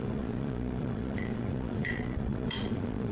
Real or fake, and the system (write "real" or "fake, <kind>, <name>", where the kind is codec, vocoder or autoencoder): fake, vocoder, Vocos